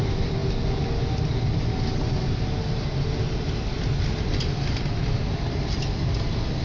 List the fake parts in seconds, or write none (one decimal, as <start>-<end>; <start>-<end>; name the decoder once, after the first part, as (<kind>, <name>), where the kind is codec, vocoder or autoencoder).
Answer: none